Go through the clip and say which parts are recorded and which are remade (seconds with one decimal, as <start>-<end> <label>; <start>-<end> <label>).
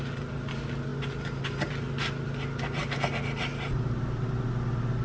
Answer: 0.0-5.0 recorded